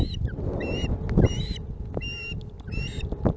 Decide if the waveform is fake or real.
real